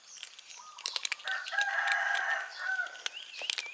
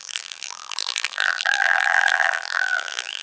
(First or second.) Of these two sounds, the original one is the first